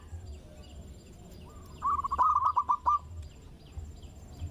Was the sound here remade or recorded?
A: recorded